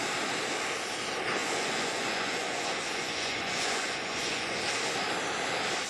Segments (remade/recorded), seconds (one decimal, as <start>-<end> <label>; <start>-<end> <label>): 0.0-1.4 recorded; 1.4-4.6 remade; 4.6-5.9 recorded